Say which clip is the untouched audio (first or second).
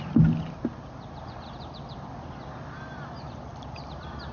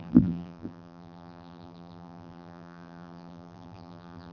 first